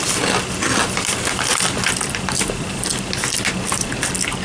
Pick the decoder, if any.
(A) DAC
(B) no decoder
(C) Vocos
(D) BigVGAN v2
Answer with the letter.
B